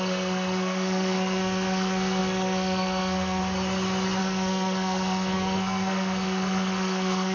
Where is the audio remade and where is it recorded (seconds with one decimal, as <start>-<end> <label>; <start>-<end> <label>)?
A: 0.0-3.4 remade; 3.4-4.2 recorded; 4.2-7.3 remade